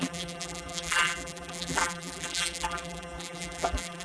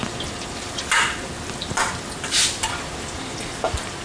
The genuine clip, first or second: second